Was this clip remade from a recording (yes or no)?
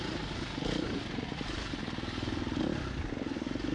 no